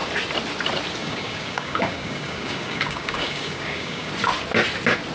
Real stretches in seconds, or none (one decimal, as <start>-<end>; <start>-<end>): 0.0-1.0; 4.1-5.1